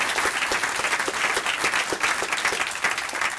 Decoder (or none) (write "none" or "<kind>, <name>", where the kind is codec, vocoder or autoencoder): none